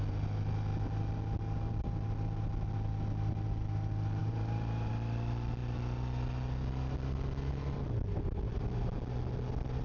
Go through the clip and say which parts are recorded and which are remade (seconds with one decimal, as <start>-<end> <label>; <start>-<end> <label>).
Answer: 0.0-4.2 recorded; 4.2-4.9 remade; 4.9-9.8 recorded